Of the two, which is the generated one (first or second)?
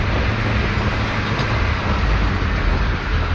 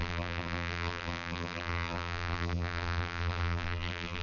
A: second